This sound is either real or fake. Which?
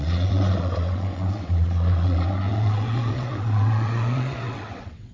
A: fake